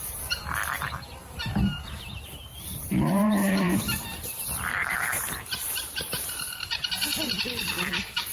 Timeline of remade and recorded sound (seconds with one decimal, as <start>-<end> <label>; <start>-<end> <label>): 0.0-2.5 recorded; 2.5-4.2 remade; 4.2-4.8 recorded; 4.8-6.9 remade; 6.9-8.3 recorded